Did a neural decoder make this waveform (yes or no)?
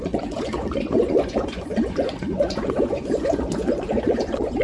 yes